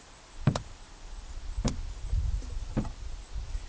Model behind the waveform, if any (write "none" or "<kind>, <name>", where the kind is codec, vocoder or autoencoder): none